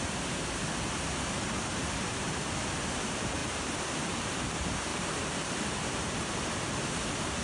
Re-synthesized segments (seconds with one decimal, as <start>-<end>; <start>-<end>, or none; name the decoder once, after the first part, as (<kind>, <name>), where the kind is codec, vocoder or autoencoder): 0.0-0.6 (vocoder, BigVGAN v2); 1.7-4.9; 5.8-7.4